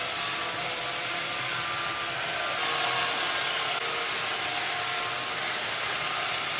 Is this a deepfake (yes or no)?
no